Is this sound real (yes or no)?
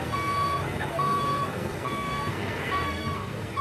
no